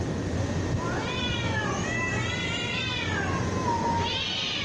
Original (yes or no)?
yes